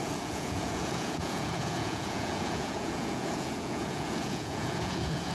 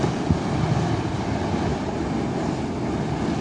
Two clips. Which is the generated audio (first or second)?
first